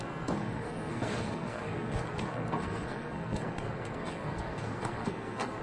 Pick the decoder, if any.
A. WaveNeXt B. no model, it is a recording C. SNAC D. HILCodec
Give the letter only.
C